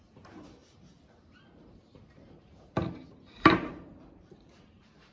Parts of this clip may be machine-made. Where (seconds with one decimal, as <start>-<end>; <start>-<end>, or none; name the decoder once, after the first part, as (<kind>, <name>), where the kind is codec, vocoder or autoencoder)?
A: 0.0-5.1 (vocoder, BigVGAN v2)